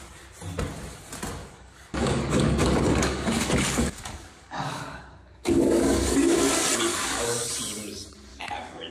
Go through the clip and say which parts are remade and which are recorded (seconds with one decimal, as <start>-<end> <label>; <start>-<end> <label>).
0.0-1.4 recorded; 1.4-6.5 remade; 6.5-6.9 recorded; 6.9-7.5 remade; 7.5-8.3 recorded; 8.3-8.9 remade